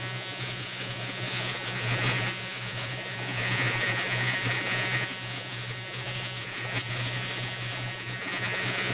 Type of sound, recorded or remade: remade